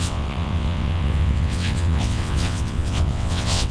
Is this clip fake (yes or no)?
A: yes